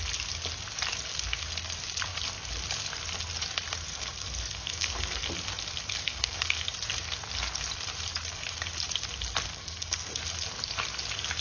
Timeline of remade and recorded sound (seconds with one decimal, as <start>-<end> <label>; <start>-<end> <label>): 0.0-3.9 recorded; 3.9-5.3 remade; 5.3-6.0 recorded; 6.0-6.6 remade; 6.6-9.5 recorded; 9.5-10.2 remade; 10.2-11.4 recorded